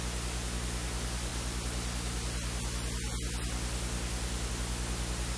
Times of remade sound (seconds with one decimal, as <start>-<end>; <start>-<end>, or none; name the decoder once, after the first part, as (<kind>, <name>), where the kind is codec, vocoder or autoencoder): none